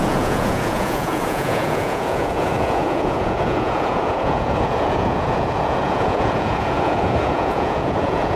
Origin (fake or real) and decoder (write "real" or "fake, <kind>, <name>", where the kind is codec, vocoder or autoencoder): fake, vocoder, Vocos